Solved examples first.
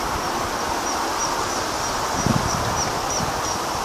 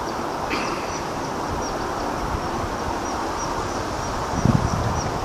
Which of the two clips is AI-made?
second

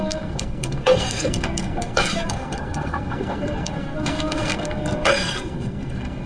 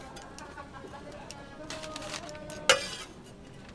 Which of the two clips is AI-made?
first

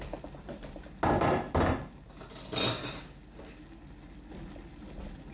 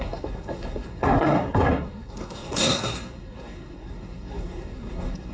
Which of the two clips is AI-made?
second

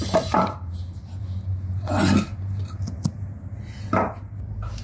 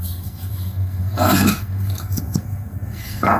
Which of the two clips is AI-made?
second